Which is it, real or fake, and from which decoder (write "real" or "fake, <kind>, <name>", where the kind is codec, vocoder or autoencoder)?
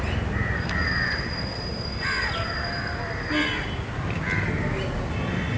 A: real